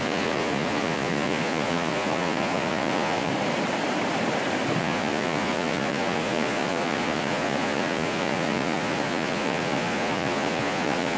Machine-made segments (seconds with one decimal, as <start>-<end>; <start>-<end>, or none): 0.0-3.3; 4.8-11.2